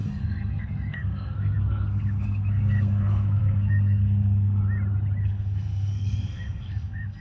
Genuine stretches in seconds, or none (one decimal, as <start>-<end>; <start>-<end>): 4.6-5.2